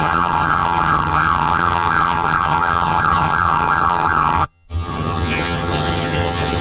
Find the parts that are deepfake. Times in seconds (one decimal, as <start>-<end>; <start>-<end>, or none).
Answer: 0.0-6.6